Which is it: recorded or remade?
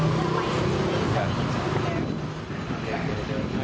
recorded